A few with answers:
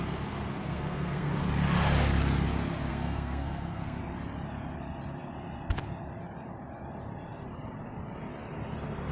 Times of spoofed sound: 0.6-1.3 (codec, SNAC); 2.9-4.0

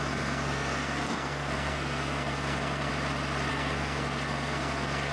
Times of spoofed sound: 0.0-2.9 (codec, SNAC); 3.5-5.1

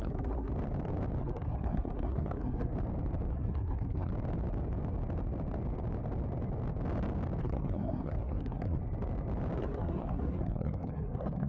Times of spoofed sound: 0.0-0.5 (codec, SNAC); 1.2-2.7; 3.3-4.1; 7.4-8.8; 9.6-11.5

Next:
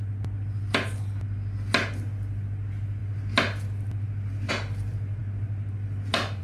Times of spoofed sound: none

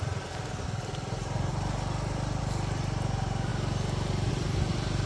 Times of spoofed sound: none

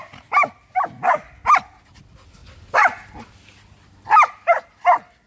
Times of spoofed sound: none